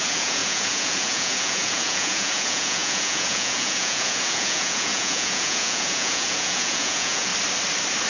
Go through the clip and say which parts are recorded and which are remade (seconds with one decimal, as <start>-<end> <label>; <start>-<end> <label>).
0.0-7.3 remade; 7.3-8.1 recorded